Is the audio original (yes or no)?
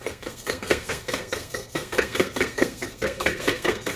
no